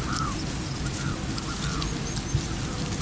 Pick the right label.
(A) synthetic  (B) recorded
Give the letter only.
B